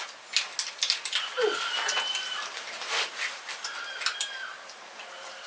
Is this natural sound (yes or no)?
yes